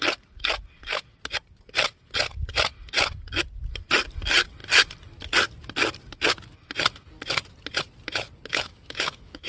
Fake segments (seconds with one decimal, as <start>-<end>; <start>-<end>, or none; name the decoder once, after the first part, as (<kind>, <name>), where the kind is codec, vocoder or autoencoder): 8.5-9.5 (autoencoder, DAC-VAE)